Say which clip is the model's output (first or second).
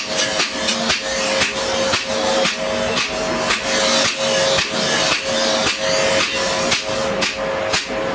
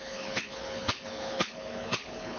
second